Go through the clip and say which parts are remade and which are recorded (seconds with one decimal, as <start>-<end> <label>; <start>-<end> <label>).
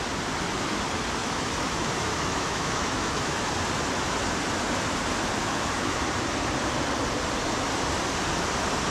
0.0-1.2 recorded; 1.2-3.5 remade; 3.5-5.4 recorded; 5.4-6.0 remade; 6.0-8.9 recorded